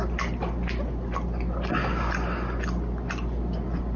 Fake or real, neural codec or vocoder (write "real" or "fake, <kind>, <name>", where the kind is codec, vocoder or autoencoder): real